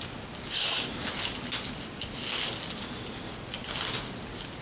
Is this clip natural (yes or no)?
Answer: yes